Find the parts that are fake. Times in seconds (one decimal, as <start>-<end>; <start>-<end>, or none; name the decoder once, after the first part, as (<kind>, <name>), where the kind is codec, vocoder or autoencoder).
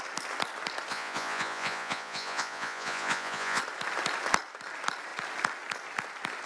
0.9-3.6 (vocoder, Vocos)